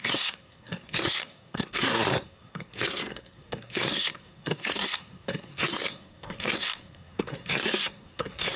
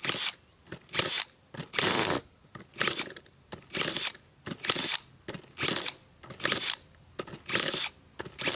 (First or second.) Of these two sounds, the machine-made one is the first